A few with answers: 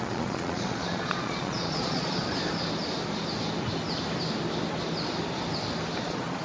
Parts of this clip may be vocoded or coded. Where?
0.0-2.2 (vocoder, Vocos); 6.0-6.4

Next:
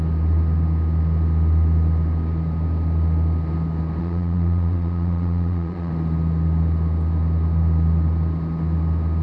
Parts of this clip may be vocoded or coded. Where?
4.0-5.9 (vocoder, Vocos)

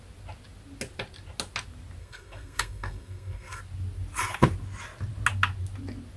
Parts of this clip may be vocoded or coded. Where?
2.0-3.6 (codec, SNAC)

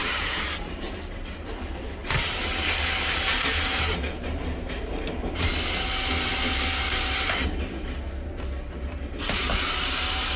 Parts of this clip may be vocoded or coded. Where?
0.0-2.0 (vocoder, BigVGAN v2); 2.7-5.5; 10.0-10.4